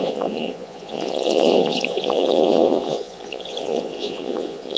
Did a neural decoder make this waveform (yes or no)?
yes